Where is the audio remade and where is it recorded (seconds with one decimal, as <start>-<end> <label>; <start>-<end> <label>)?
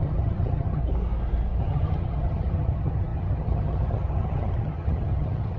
0.0-0.8 remade; 0.8-1.6 recorded; 1.6-5.6 remade